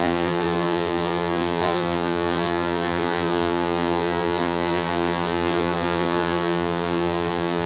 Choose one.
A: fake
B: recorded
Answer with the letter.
A